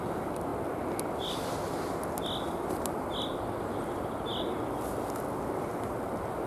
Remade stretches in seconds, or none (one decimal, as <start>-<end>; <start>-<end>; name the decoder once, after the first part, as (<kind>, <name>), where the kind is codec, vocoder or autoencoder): none